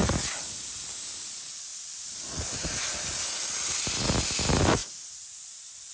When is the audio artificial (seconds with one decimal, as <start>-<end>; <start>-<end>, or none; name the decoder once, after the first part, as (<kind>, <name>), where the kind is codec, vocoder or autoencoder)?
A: 0.0-0.8 (vocoder, BigVGAN v2); 1.7-3.0; 4.8-5.9